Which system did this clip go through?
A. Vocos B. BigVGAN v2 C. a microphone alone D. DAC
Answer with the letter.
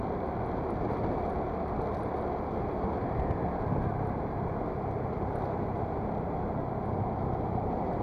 C